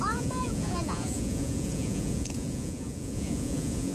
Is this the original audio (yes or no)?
no